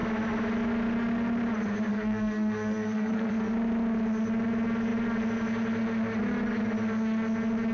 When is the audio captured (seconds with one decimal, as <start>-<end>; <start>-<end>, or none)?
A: 0.0-1.9; 3.3-7.7